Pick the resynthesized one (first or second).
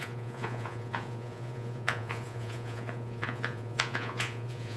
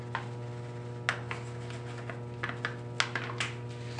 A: first